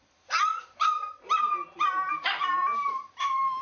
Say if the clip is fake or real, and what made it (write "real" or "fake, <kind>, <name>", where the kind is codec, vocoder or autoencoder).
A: fake, vocoder, BigVGAN v2